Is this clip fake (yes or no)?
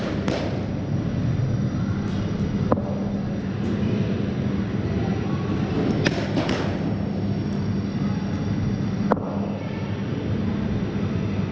no